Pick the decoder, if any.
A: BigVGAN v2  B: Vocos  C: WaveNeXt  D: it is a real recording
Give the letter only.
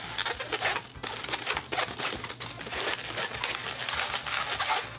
D